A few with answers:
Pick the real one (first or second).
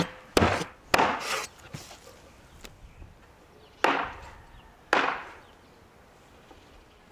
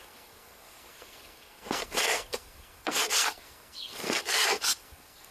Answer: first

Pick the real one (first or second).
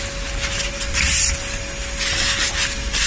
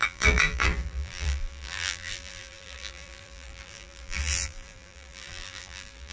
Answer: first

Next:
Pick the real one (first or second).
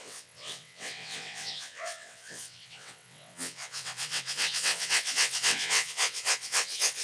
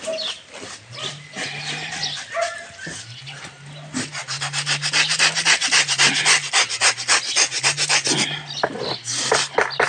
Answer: second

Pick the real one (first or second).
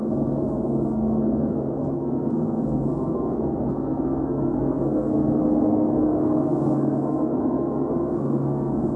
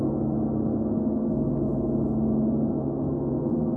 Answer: second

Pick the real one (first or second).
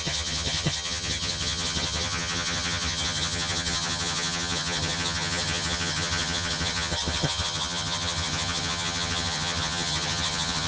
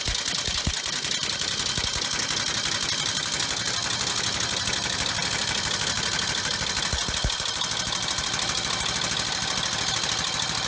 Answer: second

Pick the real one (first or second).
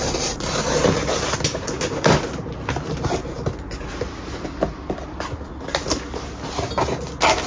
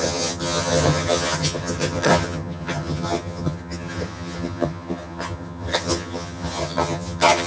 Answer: first